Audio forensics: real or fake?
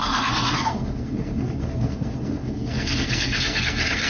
fake